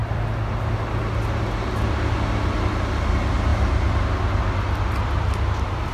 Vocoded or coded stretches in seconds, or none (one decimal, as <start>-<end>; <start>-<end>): none